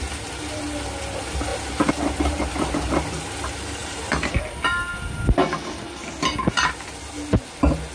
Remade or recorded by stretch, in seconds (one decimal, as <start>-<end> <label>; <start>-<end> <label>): 0.0-7.9 recorded